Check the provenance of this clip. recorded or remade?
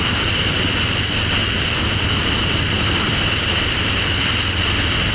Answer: remade